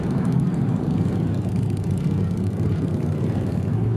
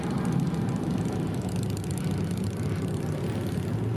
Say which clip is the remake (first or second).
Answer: first